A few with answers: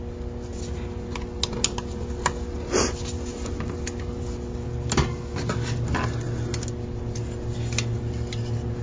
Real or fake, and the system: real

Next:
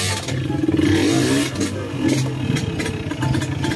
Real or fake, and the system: real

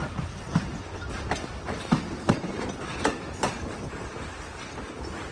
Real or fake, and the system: real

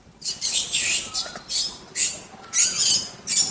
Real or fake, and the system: real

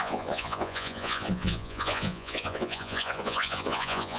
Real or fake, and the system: fake, vocoder, Vocos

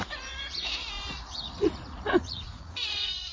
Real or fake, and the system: fake, vocoder, Vocos